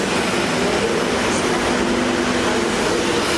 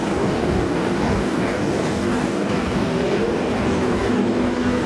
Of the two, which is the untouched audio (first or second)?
first